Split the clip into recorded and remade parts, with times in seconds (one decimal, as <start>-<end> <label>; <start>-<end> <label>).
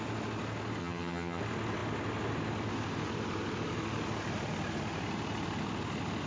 0.0-0.8 recorded; 0.8-1.4 remade; 1.4-6.3 recorded